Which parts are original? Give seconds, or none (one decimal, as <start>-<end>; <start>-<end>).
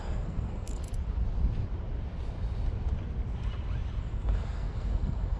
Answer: 0.8-4.0